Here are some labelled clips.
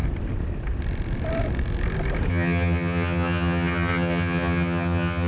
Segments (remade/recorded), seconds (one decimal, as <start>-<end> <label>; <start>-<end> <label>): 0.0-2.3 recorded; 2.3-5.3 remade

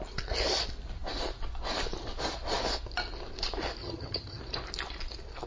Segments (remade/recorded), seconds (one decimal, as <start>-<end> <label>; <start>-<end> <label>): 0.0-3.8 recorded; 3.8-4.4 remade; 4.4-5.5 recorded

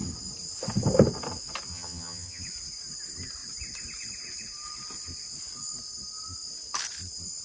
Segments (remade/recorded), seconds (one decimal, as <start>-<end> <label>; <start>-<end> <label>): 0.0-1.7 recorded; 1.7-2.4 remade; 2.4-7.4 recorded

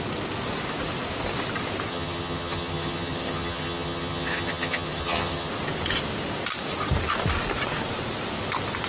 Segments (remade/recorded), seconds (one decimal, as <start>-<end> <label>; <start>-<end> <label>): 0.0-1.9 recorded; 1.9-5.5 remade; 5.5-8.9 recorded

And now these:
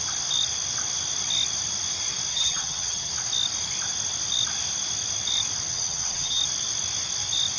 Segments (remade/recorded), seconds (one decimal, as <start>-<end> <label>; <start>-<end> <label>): 0.0-2.3 recorded; 2.3-3.1 remade; 3.1-5.7 recorded; 5.7-6.4 remade; 6.4-7.6 recorded

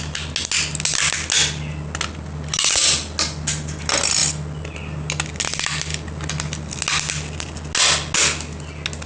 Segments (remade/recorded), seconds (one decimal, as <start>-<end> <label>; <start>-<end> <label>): 0.0-9.1 recorded

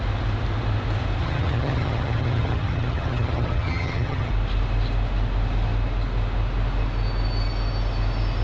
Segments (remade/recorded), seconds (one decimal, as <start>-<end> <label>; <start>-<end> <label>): 0.0-1.2 recorded; 1.2-4.3 remade; 4.3-8.4 recorded